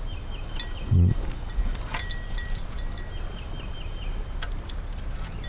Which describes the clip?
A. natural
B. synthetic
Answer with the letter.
A